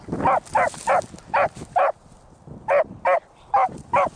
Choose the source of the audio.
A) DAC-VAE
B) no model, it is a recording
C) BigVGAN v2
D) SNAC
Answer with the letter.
B